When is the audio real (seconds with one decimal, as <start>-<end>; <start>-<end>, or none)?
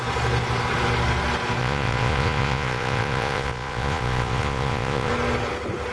0.0-1.6; 5.1-5.9